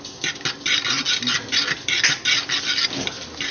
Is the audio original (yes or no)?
yes